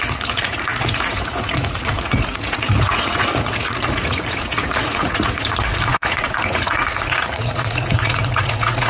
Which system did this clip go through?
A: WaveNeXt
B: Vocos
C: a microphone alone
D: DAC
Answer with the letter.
B